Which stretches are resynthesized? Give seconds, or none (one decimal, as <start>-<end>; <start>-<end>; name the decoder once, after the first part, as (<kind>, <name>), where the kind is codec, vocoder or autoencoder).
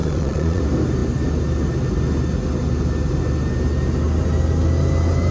0.0-0.6 (vocoder, Vocos)